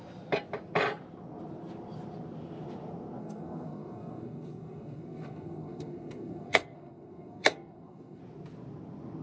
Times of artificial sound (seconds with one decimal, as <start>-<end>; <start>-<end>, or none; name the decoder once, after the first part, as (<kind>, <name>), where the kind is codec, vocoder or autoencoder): 3.2-8.2 (codec, SNAC)